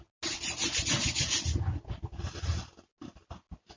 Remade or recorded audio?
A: recorded